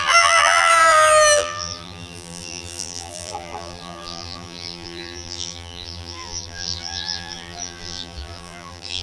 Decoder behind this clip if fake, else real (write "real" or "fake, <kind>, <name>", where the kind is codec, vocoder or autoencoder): fake, vocoder, BigVGAN v2